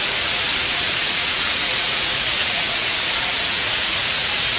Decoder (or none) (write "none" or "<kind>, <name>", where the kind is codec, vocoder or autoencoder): vocoder, Vocos